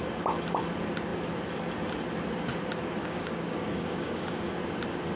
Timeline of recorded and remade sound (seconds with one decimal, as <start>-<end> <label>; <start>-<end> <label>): 0.0-3.0 recorded; 3.0-4.5 remade; 4.5-5.2 recorded